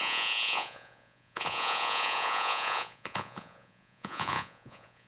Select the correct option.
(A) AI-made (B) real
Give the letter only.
A